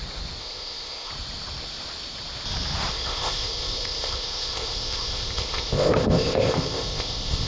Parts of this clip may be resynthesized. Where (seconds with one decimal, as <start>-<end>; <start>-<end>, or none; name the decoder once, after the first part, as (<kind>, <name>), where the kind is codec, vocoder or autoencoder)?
0.4-1.1 (codec, ZipCodec); 2.9-7.5